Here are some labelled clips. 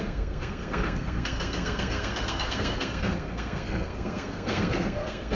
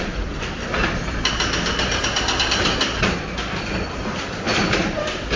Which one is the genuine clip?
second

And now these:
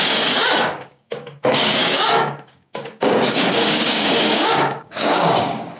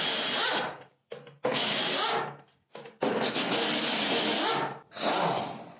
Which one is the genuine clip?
second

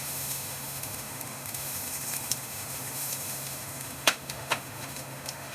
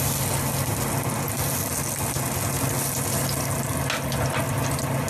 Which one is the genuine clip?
second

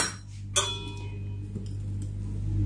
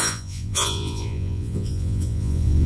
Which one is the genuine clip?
first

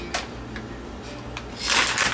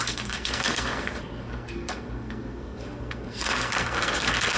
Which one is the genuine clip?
first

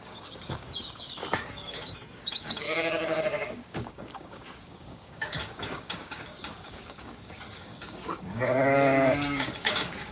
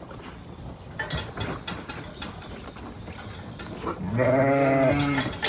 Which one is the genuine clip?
second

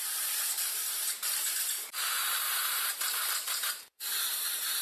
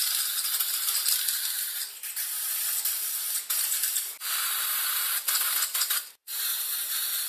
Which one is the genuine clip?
second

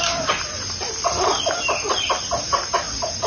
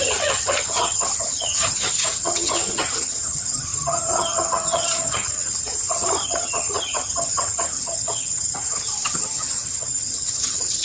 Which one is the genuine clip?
first